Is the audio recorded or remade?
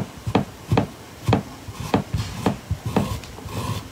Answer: recorded